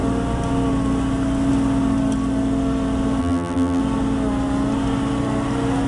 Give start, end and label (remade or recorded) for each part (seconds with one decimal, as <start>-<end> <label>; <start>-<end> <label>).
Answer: 0.0-3.2 recorded; 3.2-3.8 remade; 3.8-5.9 recorded